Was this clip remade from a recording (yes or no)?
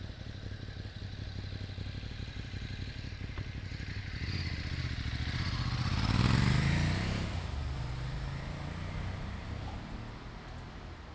no